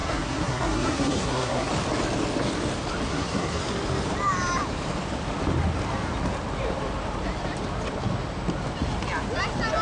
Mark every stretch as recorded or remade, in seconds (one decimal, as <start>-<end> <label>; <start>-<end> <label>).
0.0-1.7 remade; 1.7-3.1 recorded; 3.1-3.6 remade; 3.6-9.8 recorded